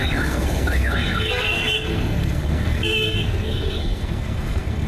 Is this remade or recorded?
remade